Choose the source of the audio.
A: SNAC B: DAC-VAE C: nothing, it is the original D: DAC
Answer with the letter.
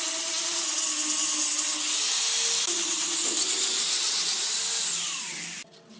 C